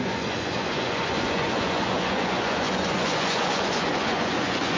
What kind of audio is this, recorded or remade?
remade